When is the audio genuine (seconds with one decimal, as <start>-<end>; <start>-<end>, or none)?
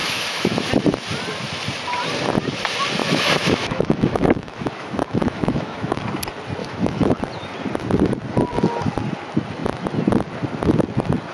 0.7-3.0; 6.0-6.6; 7.2-11.3